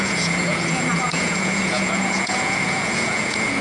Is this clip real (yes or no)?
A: no